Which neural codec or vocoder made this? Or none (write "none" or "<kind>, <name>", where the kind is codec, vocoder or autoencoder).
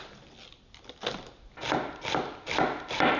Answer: none